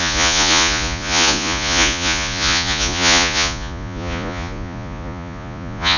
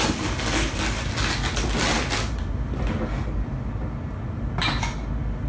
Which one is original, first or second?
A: second